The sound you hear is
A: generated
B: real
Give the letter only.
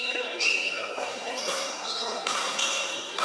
A